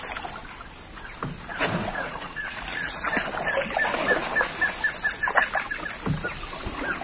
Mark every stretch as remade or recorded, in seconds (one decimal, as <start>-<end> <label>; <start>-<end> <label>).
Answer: 0.0-1.5 recorded; 1.5-3.1 remade; 3.1-7.0 recorded